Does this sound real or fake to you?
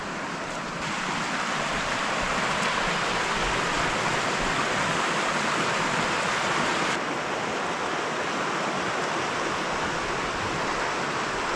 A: real